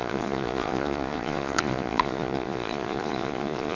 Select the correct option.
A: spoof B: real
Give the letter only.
A